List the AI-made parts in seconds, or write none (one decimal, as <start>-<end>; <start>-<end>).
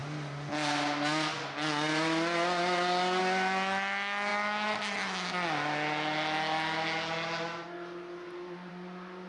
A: none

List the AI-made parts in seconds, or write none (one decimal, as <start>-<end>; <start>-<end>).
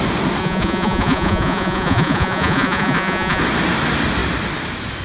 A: 0.4-3.4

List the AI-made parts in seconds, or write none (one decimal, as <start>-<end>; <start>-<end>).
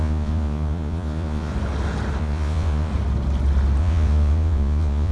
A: 0.0-1.5; 2.2-2.9; 3.8-5.1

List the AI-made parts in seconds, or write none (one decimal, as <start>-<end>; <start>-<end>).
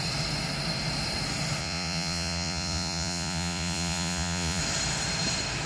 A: 1.6-4.6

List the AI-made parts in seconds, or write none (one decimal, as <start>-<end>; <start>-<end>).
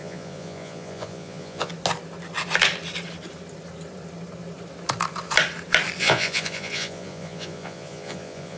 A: 0.0-1.7; 6.0-8.6